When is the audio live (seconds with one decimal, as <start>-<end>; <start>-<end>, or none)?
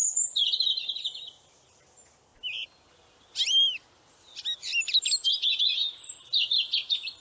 0.0-7.2